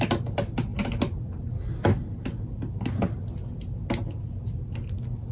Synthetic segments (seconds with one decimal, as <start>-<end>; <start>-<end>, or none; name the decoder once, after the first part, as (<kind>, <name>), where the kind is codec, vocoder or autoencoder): none